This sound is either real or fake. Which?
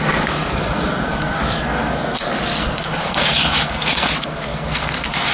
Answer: fake